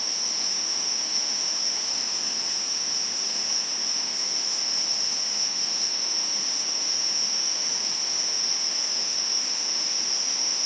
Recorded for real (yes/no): no